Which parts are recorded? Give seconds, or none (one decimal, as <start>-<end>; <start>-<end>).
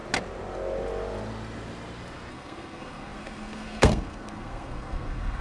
0.0-2.3